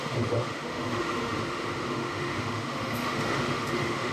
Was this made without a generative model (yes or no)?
no